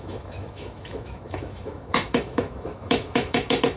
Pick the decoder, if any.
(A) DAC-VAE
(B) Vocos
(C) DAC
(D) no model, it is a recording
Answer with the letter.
A